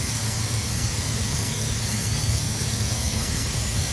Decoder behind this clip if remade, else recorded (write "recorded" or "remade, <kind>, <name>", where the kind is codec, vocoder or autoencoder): remade, codec, SNAC